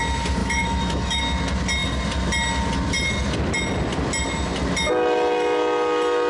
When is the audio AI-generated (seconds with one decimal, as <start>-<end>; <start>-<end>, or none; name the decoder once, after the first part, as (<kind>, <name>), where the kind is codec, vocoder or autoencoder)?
0.4-1.2 (autoencoder, DAC-VAE)